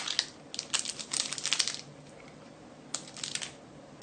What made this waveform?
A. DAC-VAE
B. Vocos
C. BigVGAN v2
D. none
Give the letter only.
D